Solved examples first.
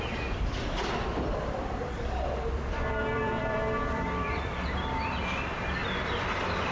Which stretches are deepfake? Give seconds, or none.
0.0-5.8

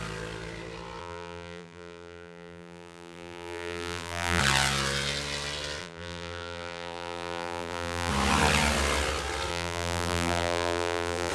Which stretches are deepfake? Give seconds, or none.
1.0-4.4; 5.8-8.1; 9.5-11.3